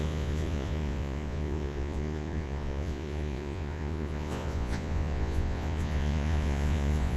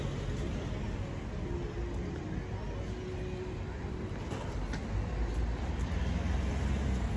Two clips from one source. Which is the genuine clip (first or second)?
second